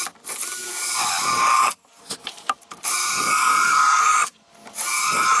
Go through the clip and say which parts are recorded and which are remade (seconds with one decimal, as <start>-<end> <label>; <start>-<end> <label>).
0.0-5.4 recorded